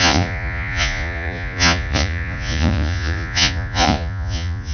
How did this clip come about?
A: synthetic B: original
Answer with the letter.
A